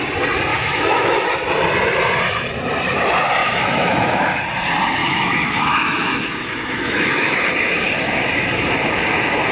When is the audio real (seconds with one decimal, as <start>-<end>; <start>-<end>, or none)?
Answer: 0.0-0.5; 1.3-3.4; 4.4-5.0; 7.5-9.5

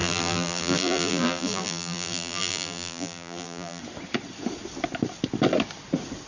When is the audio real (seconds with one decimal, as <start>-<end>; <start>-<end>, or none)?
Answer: 3.8-6.3

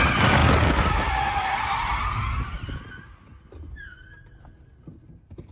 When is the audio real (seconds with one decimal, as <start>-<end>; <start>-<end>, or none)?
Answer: 0.0-5.5

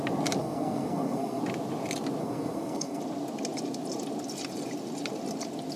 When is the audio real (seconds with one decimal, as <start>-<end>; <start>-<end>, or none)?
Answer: 0.0-0.4; 1.4-2.2; 3.0-5.8

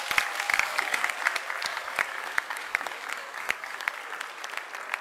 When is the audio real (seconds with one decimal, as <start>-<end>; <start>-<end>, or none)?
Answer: 0.0-0.5; 1.1-1.7; 3.9-5.0

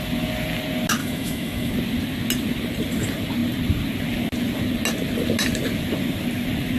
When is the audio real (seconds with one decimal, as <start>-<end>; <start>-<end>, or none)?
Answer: 0.0-1.0; 1.7-6.8

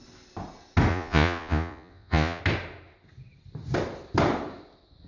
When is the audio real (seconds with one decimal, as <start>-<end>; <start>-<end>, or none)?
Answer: 0.0-0.9; 2.4-5.1

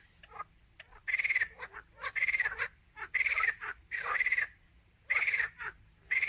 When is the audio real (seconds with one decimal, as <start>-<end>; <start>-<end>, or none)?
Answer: 0.0-2.2